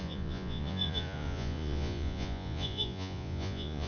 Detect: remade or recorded remade